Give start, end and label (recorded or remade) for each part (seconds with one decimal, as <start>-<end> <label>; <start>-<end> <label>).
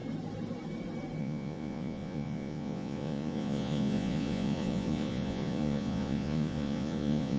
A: 0.0-1.2 recorded; 1.2-7.4 remade